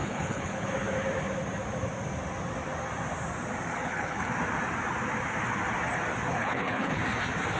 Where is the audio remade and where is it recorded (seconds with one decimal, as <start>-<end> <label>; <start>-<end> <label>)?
0.0-0.7 remade; 0.7-3.7 recorded; 3.7-4.3 remade; 4.3-6.3 recorded; 6.3-7.0 remade; 7.0-7.6 recorded